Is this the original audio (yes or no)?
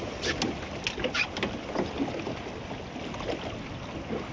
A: yes